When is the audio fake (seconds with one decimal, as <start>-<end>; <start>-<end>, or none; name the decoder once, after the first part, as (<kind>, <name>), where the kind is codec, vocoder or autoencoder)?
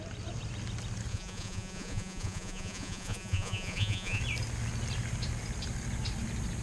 1.1-4.2 (vocoder, Vocos)